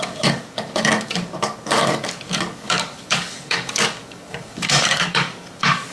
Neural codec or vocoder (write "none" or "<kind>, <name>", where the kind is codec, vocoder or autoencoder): codec, DAC